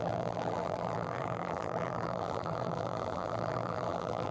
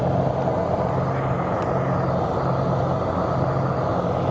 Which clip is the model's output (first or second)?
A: first